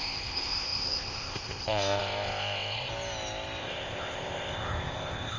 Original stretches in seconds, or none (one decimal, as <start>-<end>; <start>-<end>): 2.9-3.6